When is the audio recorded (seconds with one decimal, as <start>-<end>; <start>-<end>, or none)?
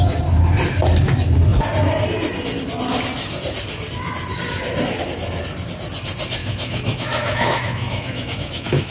0.0-6.4